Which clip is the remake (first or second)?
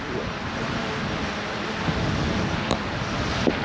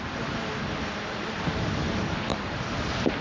second